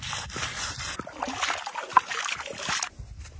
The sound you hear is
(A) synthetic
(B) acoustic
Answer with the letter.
B